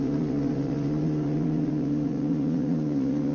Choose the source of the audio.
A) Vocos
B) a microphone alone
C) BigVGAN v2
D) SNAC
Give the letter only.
A